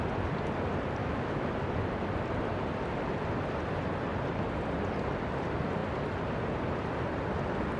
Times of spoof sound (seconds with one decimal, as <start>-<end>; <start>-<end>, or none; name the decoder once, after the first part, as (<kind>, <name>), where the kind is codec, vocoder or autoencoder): 1.0-1.5 (autoencoder, DAC-VAE)